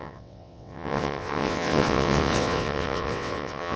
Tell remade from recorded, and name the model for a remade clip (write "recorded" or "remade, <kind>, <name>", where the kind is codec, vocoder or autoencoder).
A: remade, vocoder, WaveNeXt